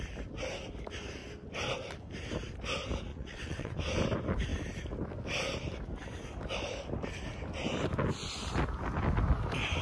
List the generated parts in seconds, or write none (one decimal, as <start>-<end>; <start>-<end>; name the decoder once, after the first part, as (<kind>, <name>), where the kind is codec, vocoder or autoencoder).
3.1-3.8 (vocoder, WaveNeXt)